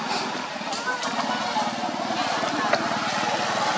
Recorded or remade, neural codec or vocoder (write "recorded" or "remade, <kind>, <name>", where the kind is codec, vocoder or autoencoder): recorded